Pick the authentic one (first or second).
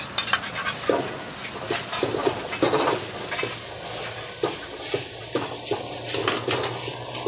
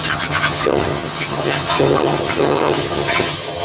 first